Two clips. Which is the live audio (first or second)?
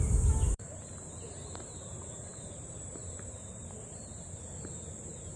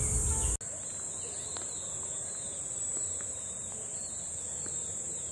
second